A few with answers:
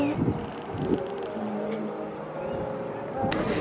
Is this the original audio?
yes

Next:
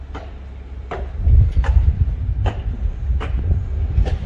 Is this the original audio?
yes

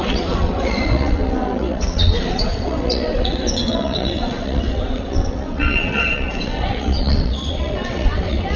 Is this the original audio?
no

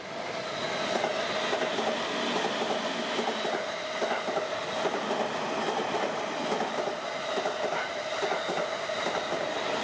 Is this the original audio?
yes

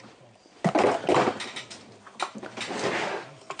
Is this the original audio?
yes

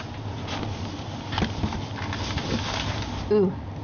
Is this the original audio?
yes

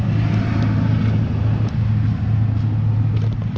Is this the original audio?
yes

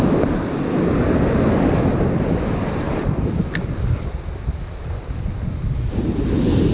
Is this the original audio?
yes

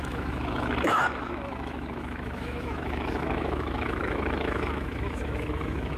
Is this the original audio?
no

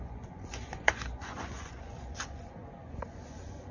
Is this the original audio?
no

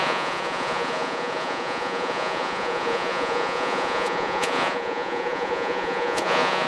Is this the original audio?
no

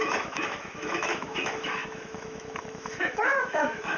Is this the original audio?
no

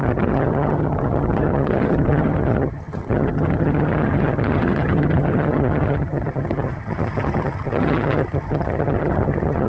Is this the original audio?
no